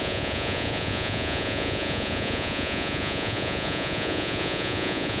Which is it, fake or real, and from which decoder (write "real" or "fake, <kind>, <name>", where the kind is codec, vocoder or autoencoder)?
fake, vocoder, Vocos